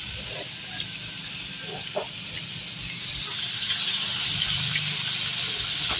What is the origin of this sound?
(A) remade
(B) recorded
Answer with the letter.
B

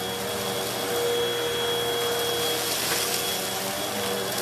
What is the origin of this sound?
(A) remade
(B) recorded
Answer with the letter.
B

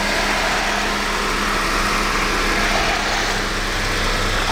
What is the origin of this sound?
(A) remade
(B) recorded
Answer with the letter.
B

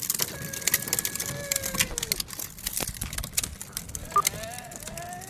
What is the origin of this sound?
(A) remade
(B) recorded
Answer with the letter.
B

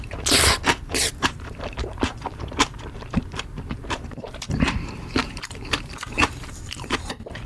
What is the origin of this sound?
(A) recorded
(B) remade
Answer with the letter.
B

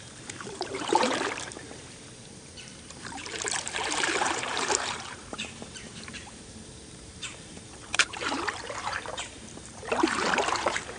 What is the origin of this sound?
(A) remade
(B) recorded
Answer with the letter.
A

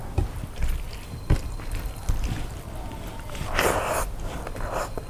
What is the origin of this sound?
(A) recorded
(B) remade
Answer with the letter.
A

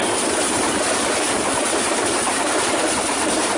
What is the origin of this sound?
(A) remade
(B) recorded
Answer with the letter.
A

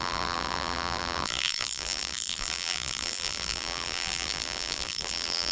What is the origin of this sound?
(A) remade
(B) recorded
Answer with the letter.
A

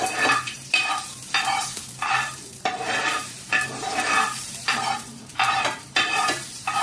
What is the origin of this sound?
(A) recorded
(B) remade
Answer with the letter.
B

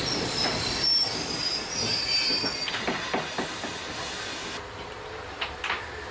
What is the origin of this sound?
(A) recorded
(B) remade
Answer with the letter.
A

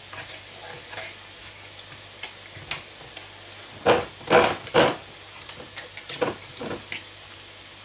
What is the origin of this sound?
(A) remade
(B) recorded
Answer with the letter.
B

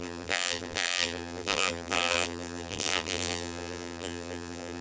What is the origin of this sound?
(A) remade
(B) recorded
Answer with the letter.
A